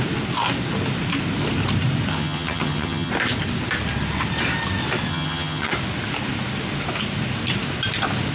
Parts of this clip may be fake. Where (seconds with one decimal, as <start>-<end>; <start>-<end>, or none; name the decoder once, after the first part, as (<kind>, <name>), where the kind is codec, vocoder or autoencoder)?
2.1-3.1 (vocoder, HiFi-GAN); 5.1-5.7